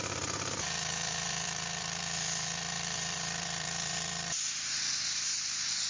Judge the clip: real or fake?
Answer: fake